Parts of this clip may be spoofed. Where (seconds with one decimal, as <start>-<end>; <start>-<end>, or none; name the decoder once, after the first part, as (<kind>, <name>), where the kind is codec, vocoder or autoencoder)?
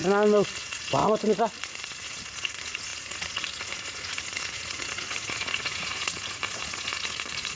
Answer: 0.6-1.0 (vocoder, Vocos); 1.6-7.6